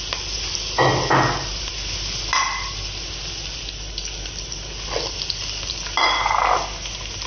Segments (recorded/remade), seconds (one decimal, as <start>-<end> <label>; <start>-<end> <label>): 0.0-7.3 recorded